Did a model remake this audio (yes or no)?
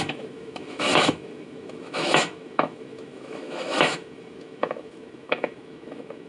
yes